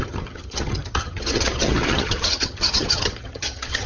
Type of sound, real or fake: fake